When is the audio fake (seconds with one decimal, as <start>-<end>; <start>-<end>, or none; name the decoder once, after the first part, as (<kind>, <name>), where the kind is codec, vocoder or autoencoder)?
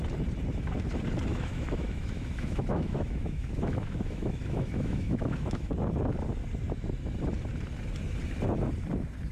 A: 1.3-5.7 (autoencoder, DAC-VAE)